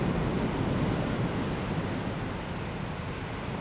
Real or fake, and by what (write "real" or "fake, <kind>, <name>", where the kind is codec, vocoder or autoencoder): real